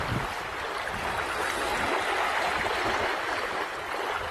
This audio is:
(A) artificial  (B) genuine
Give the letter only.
B